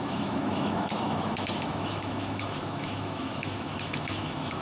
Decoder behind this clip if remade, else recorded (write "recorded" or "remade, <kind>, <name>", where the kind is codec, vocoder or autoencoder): remade, autoencoder, DAC-VAE